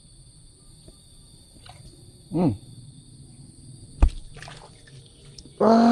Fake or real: real